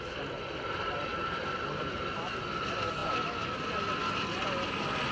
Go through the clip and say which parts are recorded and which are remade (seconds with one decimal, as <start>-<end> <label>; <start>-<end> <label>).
0.0-5.1 recorded